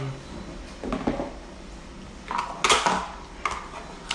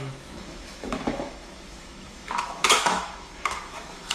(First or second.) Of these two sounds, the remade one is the second